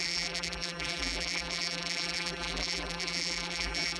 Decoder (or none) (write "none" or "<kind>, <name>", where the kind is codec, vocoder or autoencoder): vocoder, BigVGAN v2